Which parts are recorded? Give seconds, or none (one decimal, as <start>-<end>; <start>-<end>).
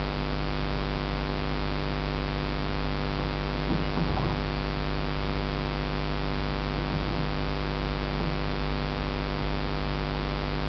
0.0-10.7